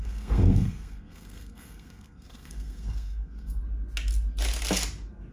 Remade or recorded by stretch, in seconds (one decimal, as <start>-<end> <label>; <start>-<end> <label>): 0.0-3.6 remade; 3.6-5.3 recorded